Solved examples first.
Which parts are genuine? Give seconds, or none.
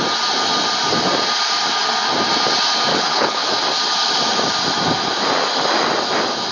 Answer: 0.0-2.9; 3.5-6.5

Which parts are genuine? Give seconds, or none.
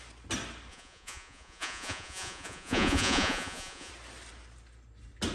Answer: 0.0-0.7; 3.9-5.3